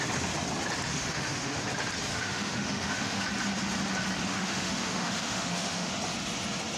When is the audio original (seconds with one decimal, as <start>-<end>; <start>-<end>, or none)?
0.0-0.9; 1.6-2.1; 3.2-4.3; 5.9-6.8